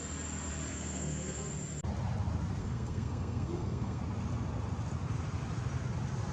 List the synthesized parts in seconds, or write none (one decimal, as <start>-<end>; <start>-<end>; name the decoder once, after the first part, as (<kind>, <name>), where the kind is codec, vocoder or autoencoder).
0.7-1.5 (codec, SNAC); 2.6-4.0